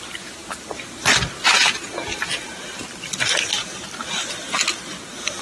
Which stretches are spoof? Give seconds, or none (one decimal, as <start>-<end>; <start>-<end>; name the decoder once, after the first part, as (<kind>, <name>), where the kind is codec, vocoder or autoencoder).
2.1-5.4 (vocoder, BigVGAN v2)